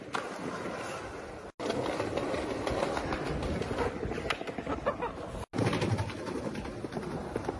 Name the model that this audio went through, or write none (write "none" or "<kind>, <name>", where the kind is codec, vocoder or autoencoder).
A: none